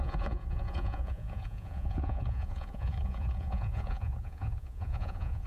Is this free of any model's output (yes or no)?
no